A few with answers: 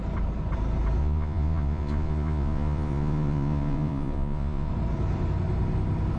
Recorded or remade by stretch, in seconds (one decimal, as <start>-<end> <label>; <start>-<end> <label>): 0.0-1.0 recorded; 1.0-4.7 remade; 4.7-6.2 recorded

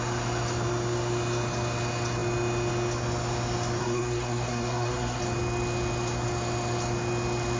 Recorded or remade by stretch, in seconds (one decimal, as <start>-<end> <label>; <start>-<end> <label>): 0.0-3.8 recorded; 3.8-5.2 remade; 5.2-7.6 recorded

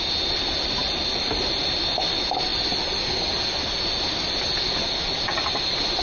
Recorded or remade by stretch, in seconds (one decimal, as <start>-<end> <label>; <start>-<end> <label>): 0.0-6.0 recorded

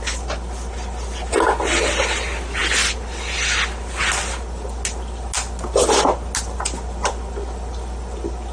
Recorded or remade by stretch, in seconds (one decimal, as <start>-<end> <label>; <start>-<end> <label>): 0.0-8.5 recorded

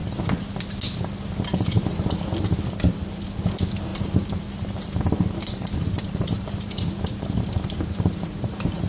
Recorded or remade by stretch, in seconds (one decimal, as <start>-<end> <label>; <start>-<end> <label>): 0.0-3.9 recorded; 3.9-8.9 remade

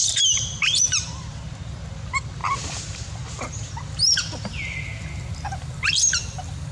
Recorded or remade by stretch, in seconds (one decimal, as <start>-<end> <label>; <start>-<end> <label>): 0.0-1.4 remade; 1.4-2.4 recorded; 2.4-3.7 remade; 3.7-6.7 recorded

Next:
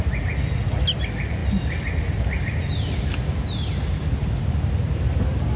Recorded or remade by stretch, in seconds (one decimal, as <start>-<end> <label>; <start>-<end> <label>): 0.0-5.6 recorded

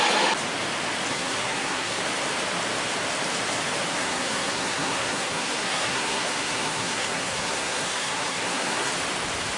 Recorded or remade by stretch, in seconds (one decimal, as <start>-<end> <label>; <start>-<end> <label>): 0.0-1.1 recorded; 1.1-2.0 remade; 2.0-4.0 recorded; 4.0-8.9 remade; 8.9-9.6 recorded